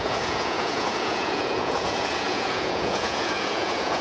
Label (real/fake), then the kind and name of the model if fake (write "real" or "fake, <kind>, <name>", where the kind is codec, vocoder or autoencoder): fake, vocoder, Vocos